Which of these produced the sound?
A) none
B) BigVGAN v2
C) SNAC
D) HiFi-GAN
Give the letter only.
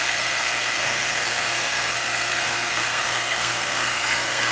C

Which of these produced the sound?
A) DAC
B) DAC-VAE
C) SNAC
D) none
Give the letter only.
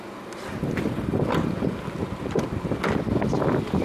D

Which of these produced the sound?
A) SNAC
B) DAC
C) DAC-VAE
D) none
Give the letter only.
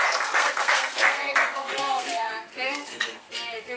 A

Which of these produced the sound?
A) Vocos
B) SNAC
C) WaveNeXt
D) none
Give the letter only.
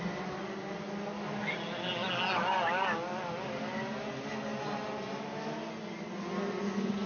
D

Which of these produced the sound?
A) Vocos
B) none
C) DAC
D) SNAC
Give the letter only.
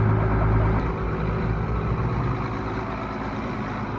B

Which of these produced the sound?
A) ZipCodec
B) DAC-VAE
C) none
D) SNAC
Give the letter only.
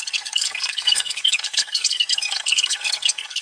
D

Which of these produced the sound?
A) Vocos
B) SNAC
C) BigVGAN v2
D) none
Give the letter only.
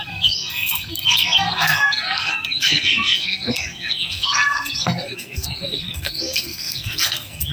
B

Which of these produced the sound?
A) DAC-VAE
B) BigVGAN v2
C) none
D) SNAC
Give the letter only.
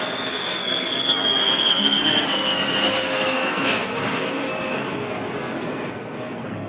D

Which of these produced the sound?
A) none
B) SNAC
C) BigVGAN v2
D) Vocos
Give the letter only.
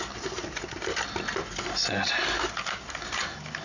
A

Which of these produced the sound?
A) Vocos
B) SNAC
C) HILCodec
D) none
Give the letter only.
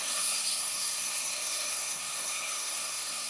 B